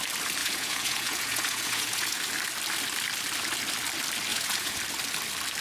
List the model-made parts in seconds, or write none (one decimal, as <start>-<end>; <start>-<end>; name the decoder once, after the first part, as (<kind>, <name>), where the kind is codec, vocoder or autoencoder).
0.4-2.2 (vocoder, Vocos); 4.3-4.8